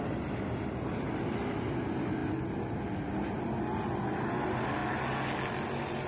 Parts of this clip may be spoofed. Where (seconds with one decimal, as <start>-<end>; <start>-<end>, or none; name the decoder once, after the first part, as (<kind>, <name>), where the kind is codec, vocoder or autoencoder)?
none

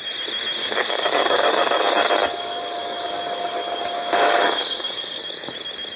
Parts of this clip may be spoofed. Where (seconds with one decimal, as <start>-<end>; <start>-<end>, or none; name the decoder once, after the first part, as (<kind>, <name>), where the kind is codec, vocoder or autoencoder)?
0.6-1.9 (codec, DAC); 2.3-5.2

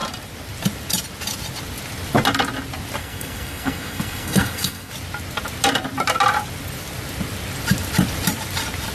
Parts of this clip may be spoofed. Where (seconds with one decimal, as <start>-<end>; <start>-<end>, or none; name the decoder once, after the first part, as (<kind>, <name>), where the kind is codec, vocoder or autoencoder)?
3.0-4.9 (codec, SNAC)

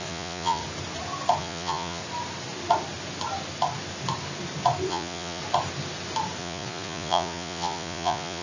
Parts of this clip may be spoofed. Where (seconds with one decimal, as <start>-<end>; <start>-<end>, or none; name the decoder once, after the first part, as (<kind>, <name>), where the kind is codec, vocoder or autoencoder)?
0.0-0.6 (vocoder, Vocos); 1.4-2.0; 4.9-5.4; 6.4-8.4

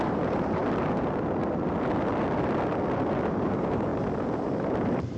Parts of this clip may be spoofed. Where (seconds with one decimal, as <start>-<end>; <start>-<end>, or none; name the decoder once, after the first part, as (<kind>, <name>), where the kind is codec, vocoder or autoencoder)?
0.0-0.6 (vocoder, BigVGAN v2); 3.3-3.9; 4.6-5.2

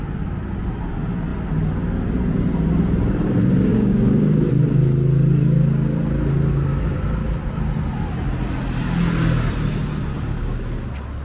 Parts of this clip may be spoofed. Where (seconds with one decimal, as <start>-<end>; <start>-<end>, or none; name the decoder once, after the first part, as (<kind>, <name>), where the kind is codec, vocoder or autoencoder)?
3.7-4.5 (codec, DAC); 10.1-10.7